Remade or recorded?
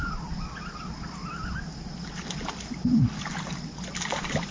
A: recorded